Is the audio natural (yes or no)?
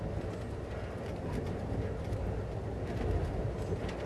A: yes